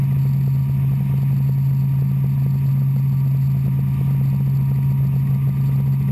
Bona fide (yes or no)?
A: yes